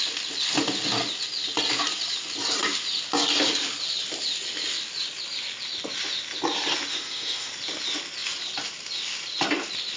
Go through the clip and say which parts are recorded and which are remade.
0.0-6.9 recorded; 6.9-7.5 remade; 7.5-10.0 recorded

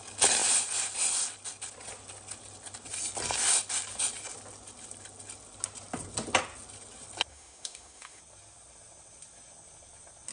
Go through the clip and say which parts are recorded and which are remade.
0.0-7.3 recorded; 7.3-8.2 remade; 8.2-10.3 recorded

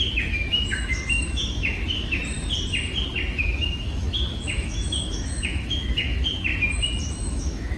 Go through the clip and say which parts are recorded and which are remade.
0.0-2.2 remade; 2.2-3.4 recorded; 3.4-6.5 remade; 6.5-7.1 recorded; 7.1-7.8 remade